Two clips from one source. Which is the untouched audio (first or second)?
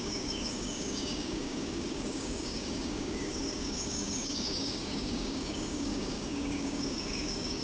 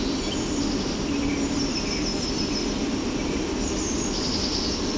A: second